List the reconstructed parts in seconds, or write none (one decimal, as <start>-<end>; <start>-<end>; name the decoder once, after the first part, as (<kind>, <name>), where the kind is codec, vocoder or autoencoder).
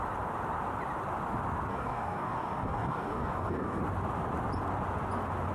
1.7-3.8 (codec, DAC)